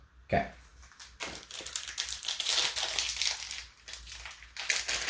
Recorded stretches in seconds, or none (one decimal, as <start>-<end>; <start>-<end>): 0.0-5.1